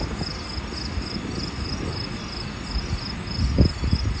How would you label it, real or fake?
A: real